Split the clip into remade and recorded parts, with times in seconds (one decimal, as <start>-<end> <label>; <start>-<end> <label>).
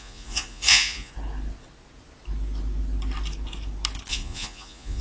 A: 0.0-1.1 remade; 1.1-4.1 recorded; 4.1-5.0 remade